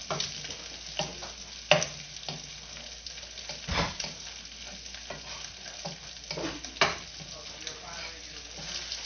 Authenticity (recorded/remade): recorded